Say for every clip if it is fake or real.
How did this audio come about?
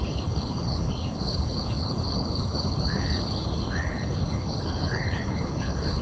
fake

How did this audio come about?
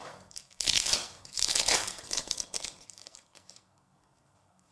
fake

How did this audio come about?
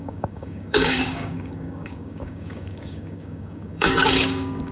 fake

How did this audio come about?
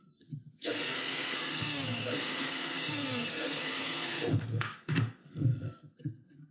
fake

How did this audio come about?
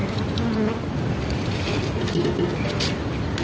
real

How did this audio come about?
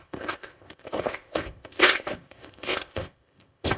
fake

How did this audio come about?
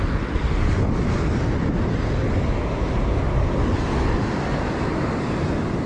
real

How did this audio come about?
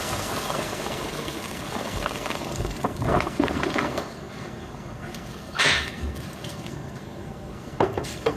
fake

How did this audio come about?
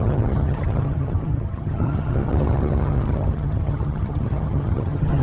fake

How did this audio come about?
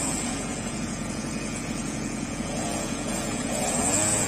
fake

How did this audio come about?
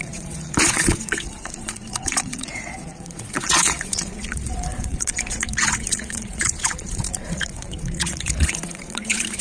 fake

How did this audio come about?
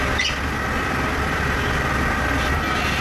real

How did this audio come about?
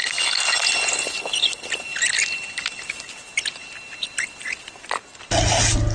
real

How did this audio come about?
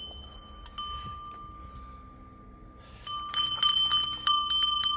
real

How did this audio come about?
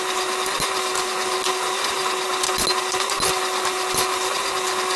real